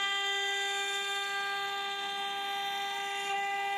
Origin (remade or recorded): recorded